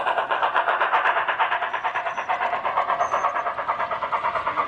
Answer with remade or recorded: remade